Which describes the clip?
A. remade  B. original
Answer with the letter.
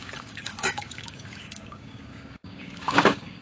A